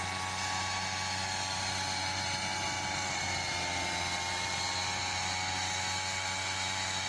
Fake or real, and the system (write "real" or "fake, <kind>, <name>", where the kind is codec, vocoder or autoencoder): real